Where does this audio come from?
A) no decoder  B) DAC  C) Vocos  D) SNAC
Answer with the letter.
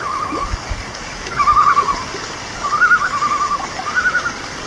B